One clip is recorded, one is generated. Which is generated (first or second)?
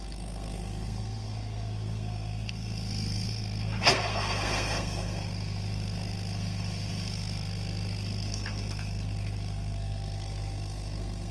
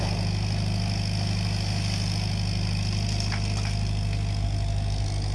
first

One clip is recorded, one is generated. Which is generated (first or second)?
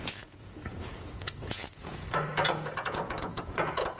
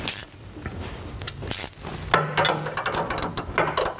first